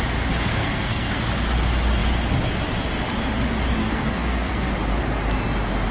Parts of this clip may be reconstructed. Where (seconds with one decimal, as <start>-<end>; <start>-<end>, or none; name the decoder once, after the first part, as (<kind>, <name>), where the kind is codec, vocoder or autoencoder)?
0.5-1.2 (codec, SNAC); 3.8-4.7